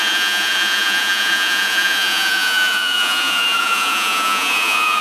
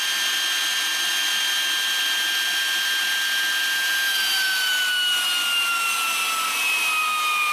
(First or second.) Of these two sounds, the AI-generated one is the first